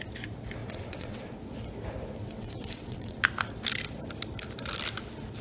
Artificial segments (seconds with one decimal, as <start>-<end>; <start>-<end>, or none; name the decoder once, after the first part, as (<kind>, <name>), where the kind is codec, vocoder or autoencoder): 0.6-1.2 (vocoder, WaveNeXt); 2.2-3.2